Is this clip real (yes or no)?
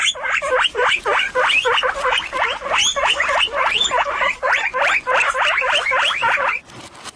no